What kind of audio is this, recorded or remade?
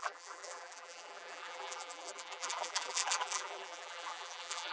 remade